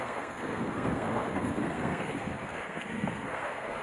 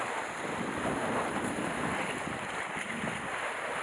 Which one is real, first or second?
second